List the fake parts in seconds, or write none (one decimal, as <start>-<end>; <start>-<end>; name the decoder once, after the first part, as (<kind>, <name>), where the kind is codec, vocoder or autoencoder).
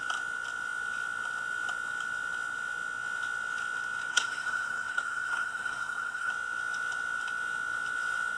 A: 4.1-6.3 (codec, SNAC)